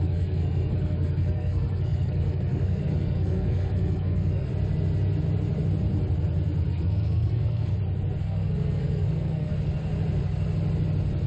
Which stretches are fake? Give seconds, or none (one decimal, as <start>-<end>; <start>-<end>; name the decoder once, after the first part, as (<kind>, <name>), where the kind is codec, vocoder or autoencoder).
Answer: 0.0-4.5 (codec, SNAC); 6.7-7.7; 8.2-9.5